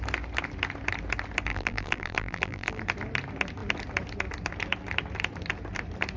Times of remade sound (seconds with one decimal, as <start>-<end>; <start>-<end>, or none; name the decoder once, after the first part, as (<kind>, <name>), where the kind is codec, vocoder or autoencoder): 1.5-2.8 (vocoder, BigVGAN v2)